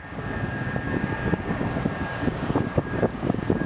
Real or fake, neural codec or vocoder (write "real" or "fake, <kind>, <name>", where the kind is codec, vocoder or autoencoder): fake, codec, DAC